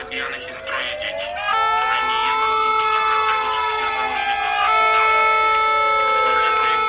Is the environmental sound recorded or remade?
recorded